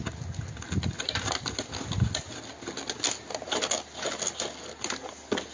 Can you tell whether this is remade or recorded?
recorded